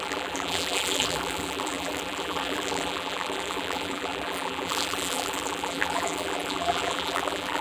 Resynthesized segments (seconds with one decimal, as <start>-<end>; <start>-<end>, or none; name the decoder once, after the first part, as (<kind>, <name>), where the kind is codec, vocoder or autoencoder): 0.0-7.6 (vocoder, BigVGAN v2)